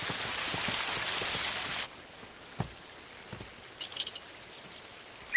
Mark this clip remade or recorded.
recorded